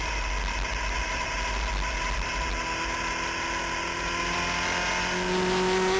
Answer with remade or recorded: recorded